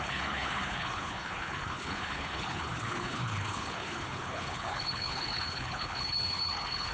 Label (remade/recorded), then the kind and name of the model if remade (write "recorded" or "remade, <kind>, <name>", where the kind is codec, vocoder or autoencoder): remade, codec, HILCodec